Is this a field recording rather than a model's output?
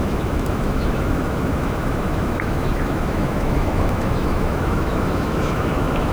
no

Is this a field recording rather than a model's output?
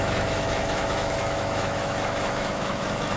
no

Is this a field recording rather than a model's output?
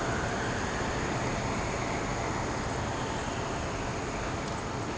yes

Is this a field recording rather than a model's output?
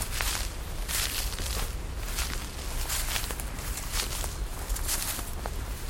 yes